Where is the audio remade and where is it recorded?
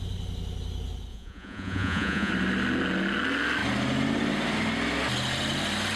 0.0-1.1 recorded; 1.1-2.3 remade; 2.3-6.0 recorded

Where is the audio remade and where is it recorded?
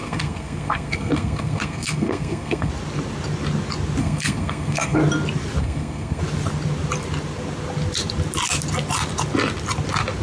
0.0-2.7 remade; 2.7-4.0 recorded; 4.0-5.0 remade; 5.0-5.6 recorded; 5.6-6.2 remade; 6.2-10.2 recorded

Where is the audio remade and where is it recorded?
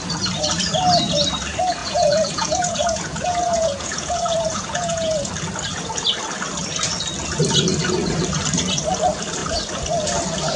0.0-1.8 recorded; 1.8-5.3 remade; 5.3-10.6 recorded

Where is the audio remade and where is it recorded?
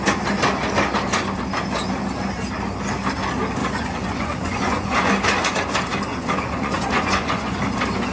0.0-3.6 recorded; 3.6-5.1 remade; 5.1-6.1 recorded; 6.1-7.6 remade; 7.6-8.1 recorded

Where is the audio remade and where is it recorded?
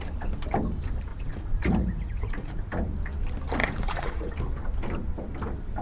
0.0-1.1 recorded; 1.1-2.7 remade; 2.7-3.6 recorded; 3.6-4.3 remade; 4.3-5.8 recorded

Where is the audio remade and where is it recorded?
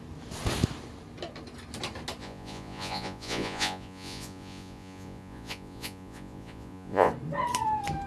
0.0-2.2 recorded; 2.2-7.1 remade; 7.1-8.1 recorded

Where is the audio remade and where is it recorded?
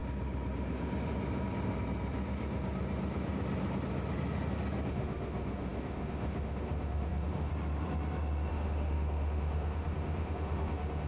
0.0-4.9 recorded; 4.9-7.5 remade; 7.5-8.5 recorded; 8.5-11.1 remade